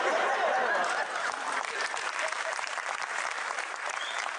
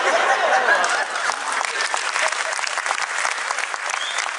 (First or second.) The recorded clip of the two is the second